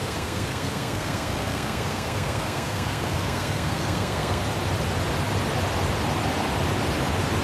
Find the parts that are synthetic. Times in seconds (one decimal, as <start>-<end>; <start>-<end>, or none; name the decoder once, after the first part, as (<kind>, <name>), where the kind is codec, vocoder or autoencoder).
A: 0.0-4.4 (codec, SNAC)